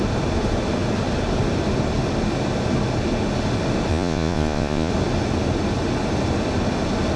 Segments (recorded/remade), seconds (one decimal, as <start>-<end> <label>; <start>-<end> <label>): 0.0-3.9 recorded; 3.9-4.9 remade; 4.9-7.2 recorded